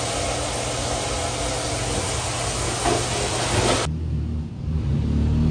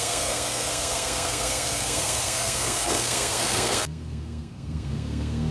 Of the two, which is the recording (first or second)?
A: first